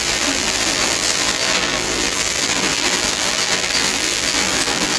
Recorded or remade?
remade